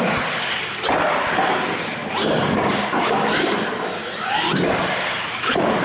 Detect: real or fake real